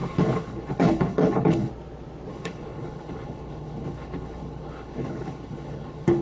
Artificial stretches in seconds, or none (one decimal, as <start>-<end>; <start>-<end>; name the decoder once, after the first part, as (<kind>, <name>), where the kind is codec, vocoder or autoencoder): 0.0-1.7 (codec, HILCodec); 2.3-6.2